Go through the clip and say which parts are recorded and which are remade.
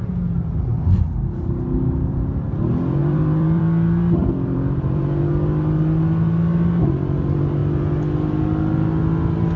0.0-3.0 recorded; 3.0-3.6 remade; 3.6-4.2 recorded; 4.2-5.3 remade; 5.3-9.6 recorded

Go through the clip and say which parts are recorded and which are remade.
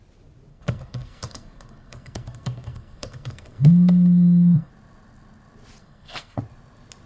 0.0-0.5 recorded; 0.5-4.7 remade; 4.7-5.8 recorded; 5.8-6.4 remade; 6.4-7.1 recorded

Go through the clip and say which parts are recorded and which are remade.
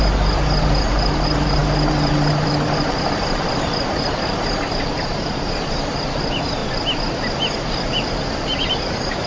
0.0-6.6 remade; 6.6-8.9 recorded; 8.9-9.3 remade